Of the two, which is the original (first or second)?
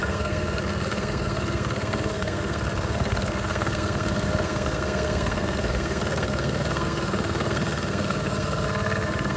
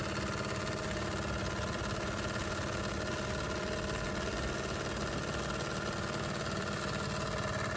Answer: second